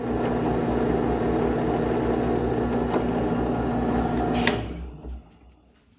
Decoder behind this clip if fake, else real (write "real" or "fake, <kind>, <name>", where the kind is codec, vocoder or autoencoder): real